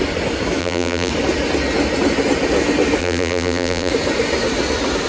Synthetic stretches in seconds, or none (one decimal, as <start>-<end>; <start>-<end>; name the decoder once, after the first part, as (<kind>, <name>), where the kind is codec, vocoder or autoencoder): 0.6-1.1 (vocoder, BigVGAN v2); 3.0-3.9